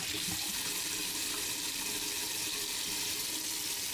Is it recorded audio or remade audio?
recorded